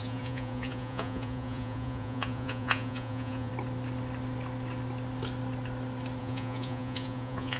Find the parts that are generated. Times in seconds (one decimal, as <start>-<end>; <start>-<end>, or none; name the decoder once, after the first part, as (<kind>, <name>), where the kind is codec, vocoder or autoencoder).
0.0-3.5 (vocoder, Vocos); 6.2-7.6